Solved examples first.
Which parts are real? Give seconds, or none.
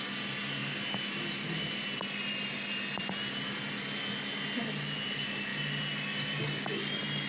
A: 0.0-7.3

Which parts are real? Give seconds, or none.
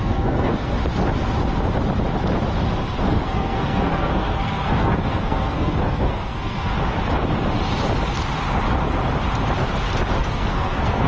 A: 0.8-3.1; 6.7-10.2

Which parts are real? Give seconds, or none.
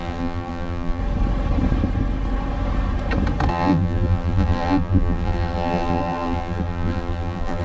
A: 1.0-3.5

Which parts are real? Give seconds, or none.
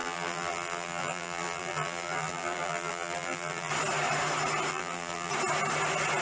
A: 3.7-4.7; 5.3-6.2